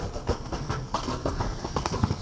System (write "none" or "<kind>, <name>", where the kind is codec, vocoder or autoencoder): codec, SNAC